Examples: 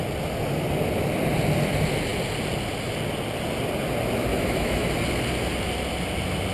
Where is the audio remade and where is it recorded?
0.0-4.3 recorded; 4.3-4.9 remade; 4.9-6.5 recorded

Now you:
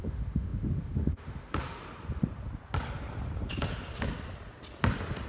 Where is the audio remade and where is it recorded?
0.0-1.8 remade; 1.8-5.3 recorded

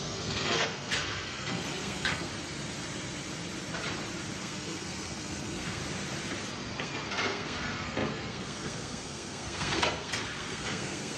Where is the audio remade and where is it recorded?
0.0-2.3 remade; 2.3-4.4 recorded; 4.4-5.8 remade; 5.8-6.8 recorded; 6.8-11.2 remade

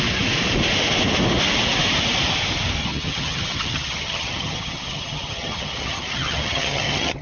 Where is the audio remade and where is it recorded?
0.0-2.8 recorded; 2.8-7.2 remade

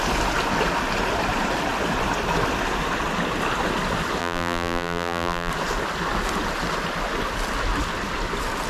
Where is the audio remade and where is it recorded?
0.0-4.2 recorded; 4.2-5.5 remade; 5.5-8.7 recorded

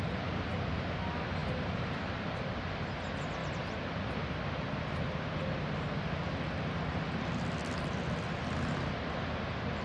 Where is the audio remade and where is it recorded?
0.0-1.4 recorded; 1.4-2.5 remade; 2.5-9.8 recorded

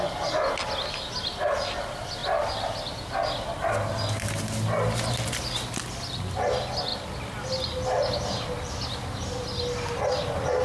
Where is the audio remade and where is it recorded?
0.0-10.6 recorded

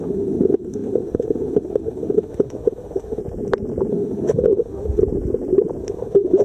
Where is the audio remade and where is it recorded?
0.0-3.2 remade; 3.2-3.9 recorded; 3.9-5.0 remade; 5.0-5.8 recorded; 5.8-6.4 remade